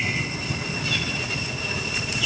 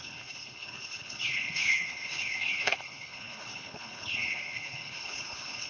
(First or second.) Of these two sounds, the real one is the first